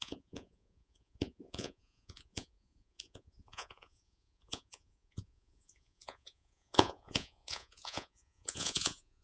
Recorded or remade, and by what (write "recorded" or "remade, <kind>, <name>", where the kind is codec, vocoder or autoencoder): remade, vocoder, Vocos